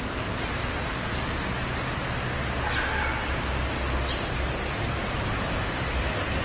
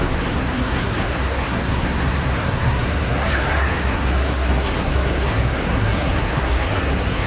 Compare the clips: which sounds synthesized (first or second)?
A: second